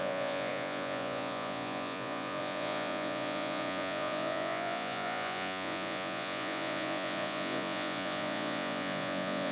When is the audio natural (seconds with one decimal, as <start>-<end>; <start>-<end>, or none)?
none